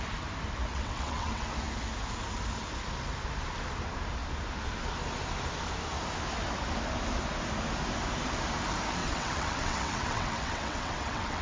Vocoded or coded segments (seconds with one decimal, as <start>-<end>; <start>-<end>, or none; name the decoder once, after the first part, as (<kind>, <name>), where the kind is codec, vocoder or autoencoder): 0.7-1.5 (vocoder, WaveNeXt); 9.0-11.4